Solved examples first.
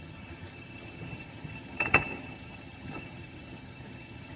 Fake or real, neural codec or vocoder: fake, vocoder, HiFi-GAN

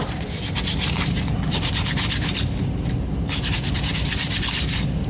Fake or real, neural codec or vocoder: real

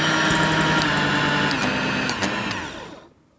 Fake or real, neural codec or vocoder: real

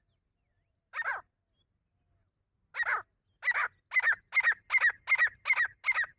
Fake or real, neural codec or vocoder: real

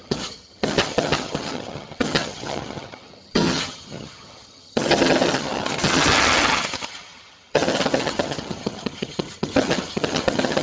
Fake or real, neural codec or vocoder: fake, vocoder, HiFi-GAN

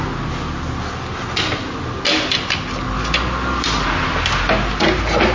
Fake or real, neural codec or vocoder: real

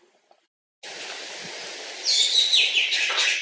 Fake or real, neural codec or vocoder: real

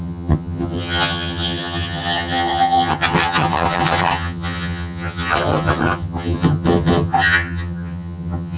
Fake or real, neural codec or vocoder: fake, vocoder, HiFi-GAN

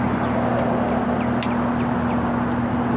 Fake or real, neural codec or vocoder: real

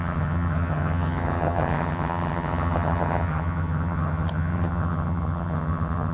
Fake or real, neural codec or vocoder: fake, vocoder, HiFi-GAN